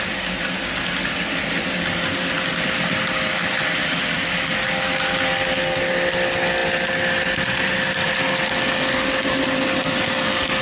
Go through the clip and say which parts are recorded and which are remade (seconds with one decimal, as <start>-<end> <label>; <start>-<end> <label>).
0.0-10.6 recorded